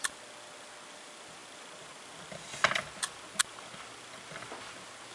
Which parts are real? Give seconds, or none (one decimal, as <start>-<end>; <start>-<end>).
0.0-5.1